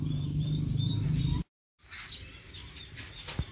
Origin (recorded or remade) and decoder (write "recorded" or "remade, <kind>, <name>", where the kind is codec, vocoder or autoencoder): recorded